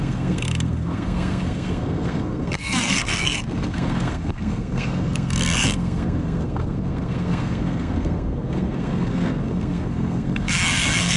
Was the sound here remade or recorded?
remade